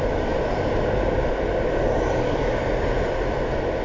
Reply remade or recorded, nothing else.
recorded